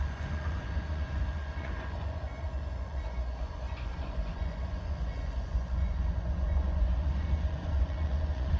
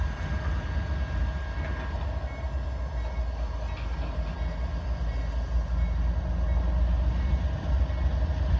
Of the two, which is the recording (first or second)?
second